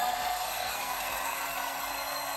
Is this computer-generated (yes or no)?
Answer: yes